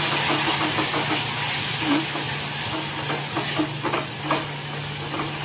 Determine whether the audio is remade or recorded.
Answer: recorded